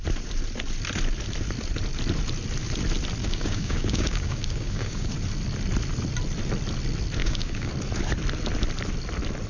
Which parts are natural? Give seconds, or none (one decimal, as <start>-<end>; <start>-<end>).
0.0-3.2; 5.1-7.2; 7.7-9.5